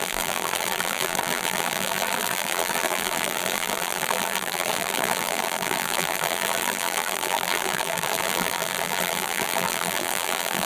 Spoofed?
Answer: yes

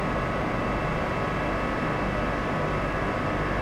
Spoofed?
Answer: no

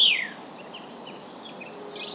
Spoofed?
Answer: no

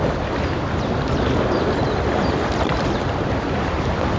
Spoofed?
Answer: yes